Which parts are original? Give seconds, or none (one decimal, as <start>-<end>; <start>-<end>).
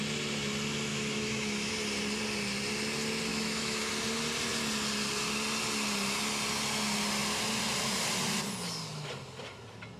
0.0-0.9; 1.7-3.3; 3.9-10.0